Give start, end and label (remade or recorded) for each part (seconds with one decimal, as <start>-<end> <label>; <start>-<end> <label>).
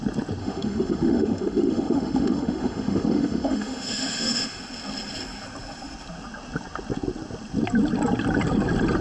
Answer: 0.0-0.4 recorded; 0.4-4.6 remade; 4.6-9.0 recorded